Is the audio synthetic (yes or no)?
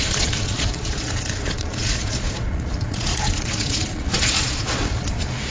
yes